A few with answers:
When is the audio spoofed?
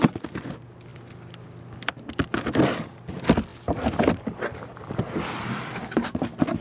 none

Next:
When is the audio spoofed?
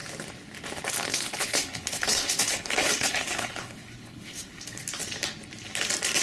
1.1-4.8 (codec, HILCodec)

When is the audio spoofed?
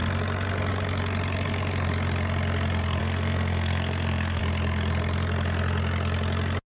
3.0-4.4 (codec, SNAC)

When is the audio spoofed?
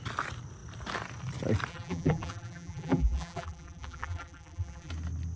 1.7-4.9 (vocoder, BigVGAN v2)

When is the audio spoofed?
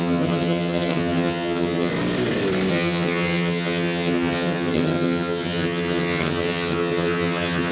0.0-1.9 (vocoder, HiFi-GAN); 2.7-7.7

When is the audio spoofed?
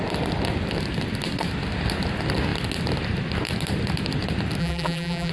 4.6-5.3 (vocoder, BigVGAN v2)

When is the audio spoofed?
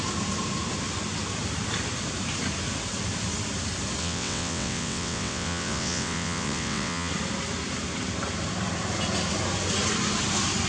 4.0-7.1 (vocoder, WaveNeXt)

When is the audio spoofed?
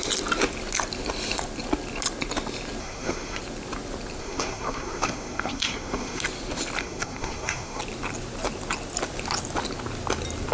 2.8-3.4 (codec, SNAC); 4.2-6.2; 6.8-7.8